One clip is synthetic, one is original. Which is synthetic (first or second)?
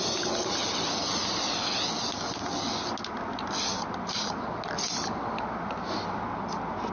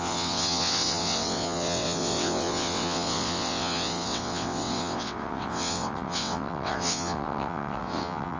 second